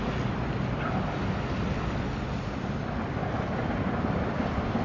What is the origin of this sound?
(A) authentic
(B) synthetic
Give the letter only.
A